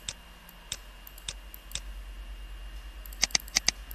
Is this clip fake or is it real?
real